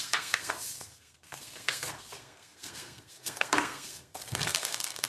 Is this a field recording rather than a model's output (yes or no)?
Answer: no